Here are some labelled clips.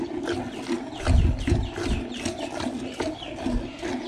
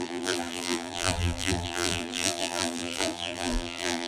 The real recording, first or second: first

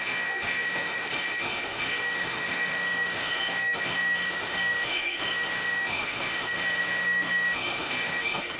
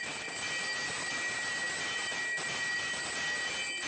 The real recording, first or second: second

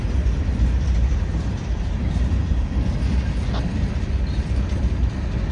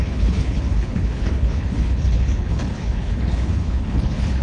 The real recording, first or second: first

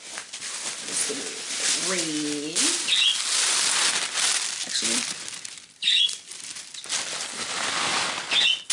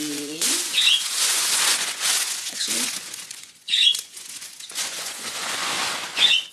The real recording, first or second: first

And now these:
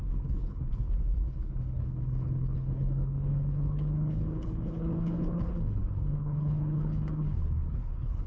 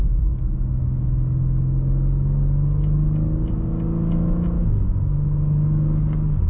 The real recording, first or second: second